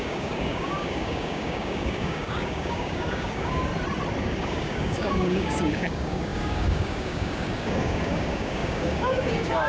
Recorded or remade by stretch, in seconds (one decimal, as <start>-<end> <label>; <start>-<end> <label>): 0.0-3.7 remade; 3.7-4.2 recorded; 4.2-9.7 remade